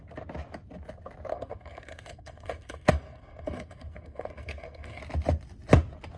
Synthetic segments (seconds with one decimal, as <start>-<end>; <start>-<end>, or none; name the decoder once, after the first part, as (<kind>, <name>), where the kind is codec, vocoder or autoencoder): 1.3-5.0 (codec, SNAC)